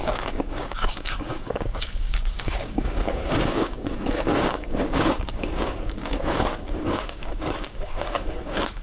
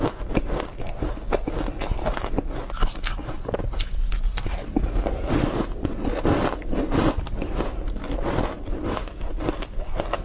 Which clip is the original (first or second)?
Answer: second